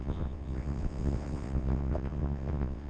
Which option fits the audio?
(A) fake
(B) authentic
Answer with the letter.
A